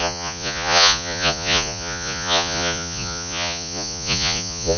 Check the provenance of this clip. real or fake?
fake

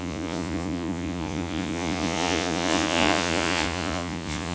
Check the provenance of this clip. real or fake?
fake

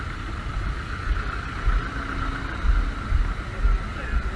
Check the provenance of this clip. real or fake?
real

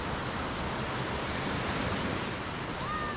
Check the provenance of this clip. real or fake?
real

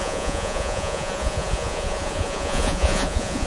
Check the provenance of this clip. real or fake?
fake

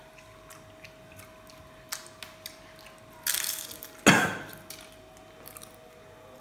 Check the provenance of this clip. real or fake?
real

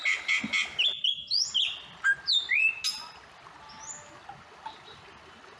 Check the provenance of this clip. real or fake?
real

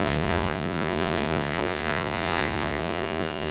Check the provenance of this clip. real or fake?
fake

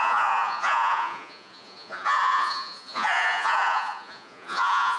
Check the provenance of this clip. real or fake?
fake